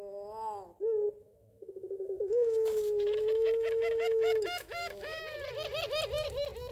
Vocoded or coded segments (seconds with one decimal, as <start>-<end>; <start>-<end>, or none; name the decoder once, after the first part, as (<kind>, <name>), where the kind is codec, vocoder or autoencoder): 1.2-5.2 (autoencoder, DAC-VAE)